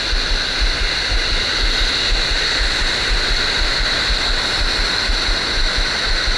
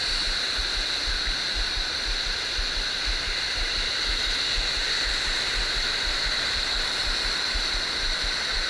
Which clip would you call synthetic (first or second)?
second